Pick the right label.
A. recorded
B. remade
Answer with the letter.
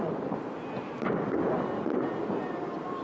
A